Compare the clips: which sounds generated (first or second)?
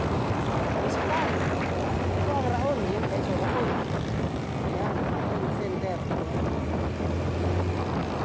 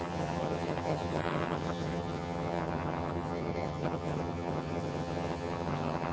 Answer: second